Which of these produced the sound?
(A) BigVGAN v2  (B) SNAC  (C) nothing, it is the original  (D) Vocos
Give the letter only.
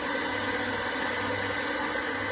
C